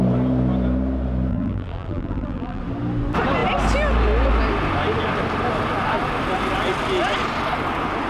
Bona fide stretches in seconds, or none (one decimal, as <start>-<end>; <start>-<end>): 0.0-1.3; 2.6-8.1